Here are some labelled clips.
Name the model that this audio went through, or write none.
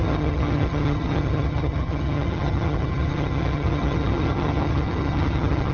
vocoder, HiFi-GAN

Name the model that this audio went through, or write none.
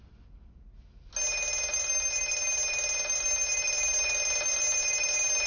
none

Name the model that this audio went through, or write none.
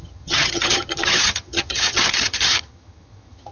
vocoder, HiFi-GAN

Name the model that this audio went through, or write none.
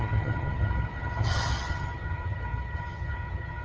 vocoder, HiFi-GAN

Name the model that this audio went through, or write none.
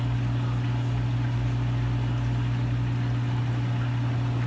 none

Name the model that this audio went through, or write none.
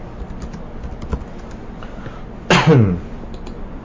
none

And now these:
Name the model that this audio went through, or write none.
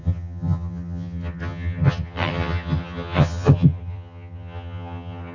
vocoder, HiFi-GAN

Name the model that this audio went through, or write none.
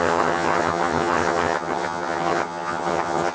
vocoder, HiFi-GAN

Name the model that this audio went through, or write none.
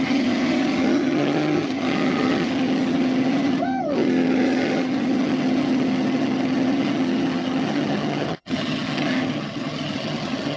vocoder, HiFi-GAN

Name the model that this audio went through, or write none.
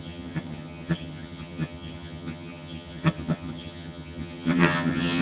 vocoder, HiFi-GAN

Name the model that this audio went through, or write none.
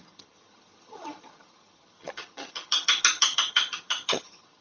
vocoder, HiFi-GAN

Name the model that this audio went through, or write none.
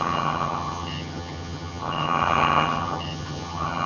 vocoder, HiFi-GAN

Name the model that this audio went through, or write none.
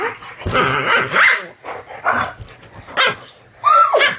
none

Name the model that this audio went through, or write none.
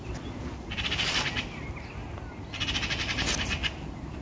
none